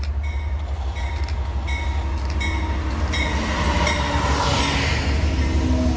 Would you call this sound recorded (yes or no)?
yes